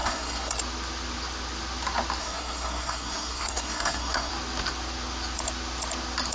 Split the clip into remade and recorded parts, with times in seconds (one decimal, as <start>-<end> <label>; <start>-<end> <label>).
0.0-0.6 remade; 0.6-2.2 recorded; 2.2-4.3 remade; 4.3-6.3 recorded